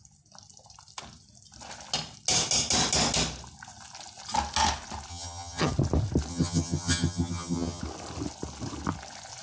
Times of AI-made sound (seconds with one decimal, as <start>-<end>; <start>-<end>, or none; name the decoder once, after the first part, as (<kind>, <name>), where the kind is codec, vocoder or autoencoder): 5.1-5.7 (vocoder, HiFi-GAN); 6.3-7.8